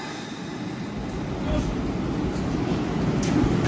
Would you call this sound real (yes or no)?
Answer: yes